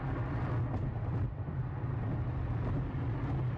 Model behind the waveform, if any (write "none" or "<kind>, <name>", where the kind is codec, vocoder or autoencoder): none